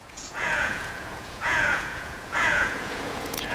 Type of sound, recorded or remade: remade